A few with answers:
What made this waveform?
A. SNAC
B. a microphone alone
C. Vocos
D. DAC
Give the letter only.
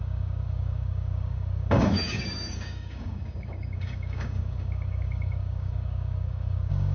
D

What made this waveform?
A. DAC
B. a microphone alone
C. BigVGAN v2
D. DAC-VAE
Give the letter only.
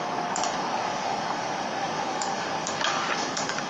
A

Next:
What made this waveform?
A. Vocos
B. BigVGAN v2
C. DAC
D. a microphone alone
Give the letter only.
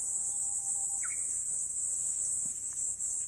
D